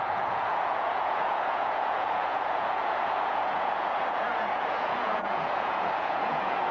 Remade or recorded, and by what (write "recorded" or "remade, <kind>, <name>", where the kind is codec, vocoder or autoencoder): remade, vocoder, Vocos